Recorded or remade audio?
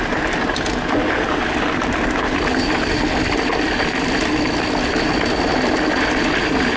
recorded